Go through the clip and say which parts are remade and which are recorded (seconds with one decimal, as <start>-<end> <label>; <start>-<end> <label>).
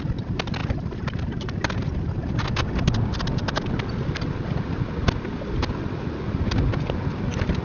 0.0-7.6 recorded